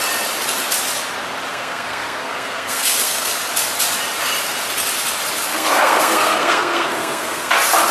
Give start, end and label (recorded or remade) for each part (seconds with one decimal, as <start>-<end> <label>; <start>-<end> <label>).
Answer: 0.0-1.5 recorded; 1.5-3.3 remade; 3.3-5.5 recorded; 5.5-7.5 remade; 7.5-7.9 recorded